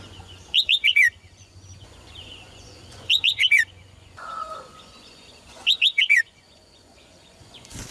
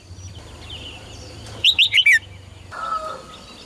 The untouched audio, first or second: second